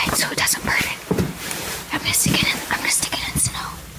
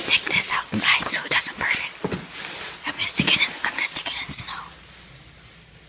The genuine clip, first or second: second